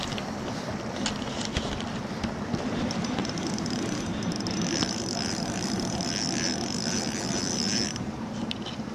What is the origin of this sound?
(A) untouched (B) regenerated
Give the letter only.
A